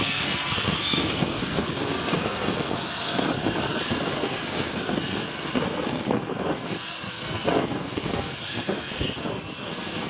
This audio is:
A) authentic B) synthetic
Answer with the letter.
B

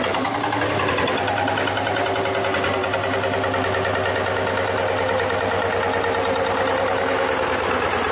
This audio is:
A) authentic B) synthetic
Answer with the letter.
A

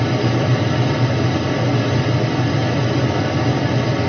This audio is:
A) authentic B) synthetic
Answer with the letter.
A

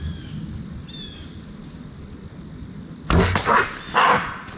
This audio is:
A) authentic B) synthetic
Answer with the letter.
A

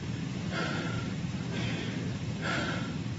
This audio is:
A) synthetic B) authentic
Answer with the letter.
A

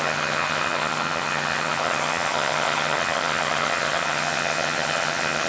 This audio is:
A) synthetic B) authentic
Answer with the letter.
A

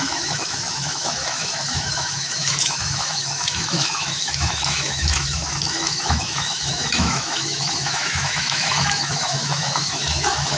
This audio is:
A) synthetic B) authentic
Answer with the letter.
A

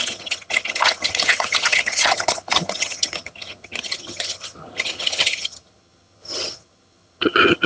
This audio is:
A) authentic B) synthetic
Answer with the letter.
B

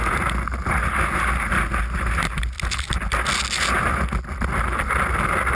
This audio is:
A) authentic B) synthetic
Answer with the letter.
A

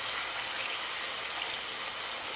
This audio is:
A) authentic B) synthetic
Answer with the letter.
A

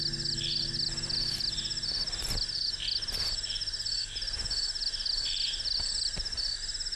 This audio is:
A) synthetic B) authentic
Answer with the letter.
B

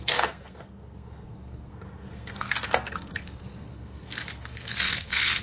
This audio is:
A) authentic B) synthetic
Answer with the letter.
B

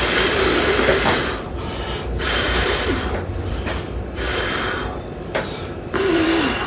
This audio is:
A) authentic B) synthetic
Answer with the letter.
B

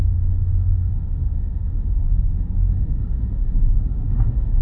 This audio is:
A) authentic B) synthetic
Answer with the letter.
B